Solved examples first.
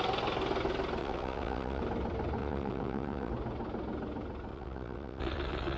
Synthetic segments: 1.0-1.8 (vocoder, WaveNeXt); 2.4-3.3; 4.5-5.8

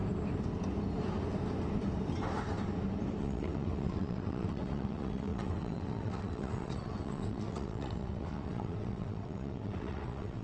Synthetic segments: 3.2-10.4 (vocoder, WaveNeXt)

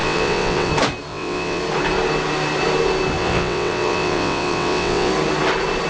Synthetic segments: 0.0-0.7 (vocoder, WaveNeXt); 1.1-1.6; 3.2-5.1

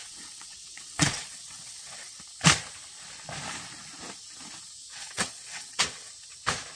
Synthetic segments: 0.0-2.2 (vocoder, WaveNeXt); 4.9-6.1

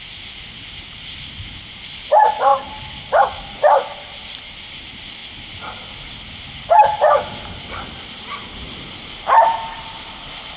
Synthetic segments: none

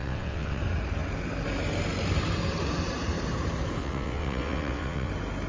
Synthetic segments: 0.0-0.6 (vocoder, WaveNeXt); 3.8-5.1

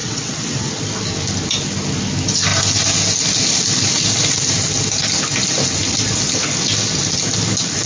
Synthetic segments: 0.0-0.7 (vocoder, WaveNeXt)